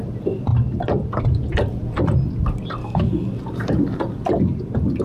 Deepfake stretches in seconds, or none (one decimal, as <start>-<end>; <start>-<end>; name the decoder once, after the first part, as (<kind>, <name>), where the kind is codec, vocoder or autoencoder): 2.8-3.3 (codec, DAC)